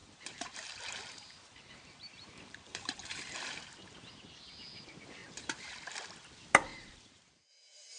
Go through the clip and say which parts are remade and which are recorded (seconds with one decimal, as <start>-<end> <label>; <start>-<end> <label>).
0.0-4.1 remade; 4.1-5.2 recorded; 5.2-5.7 remade; 5.7-6.7 recorded; 6.7-7.5 remade; 7.5-8.0 recorded